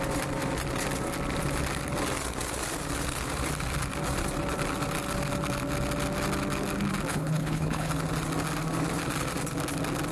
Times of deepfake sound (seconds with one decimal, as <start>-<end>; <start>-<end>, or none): 7.1-7.9